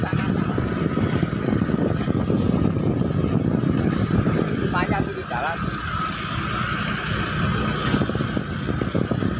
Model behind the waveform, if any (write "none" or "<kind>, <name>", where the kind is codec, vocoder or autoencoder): none